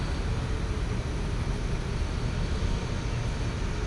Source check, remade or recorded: recorded